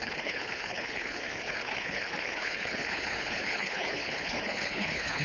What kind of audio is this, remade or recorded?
remade